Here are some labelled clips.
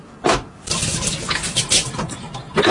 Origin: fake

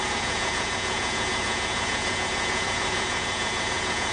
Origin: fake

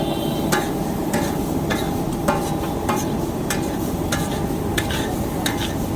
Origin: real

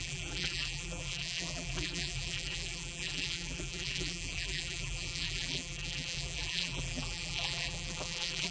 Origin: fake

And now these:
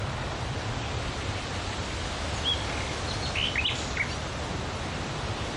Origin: real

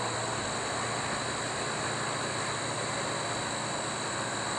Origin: real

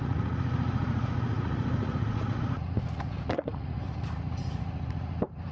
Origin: fake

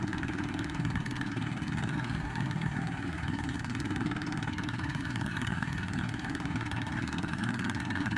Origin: fake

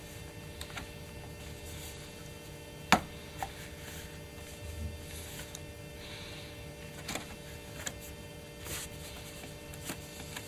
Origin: real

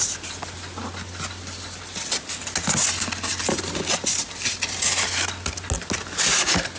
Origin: real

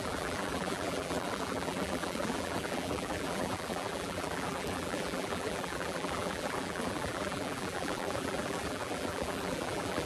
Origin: fake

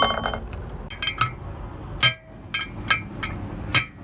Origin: real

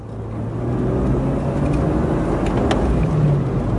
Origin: real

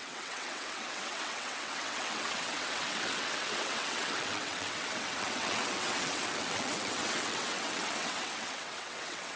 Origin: fake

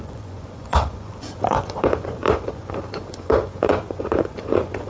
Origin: fake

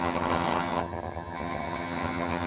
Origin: fake